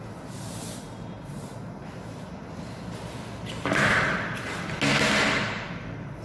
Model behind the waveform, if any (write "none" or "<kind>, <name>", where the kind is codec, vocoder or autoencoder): none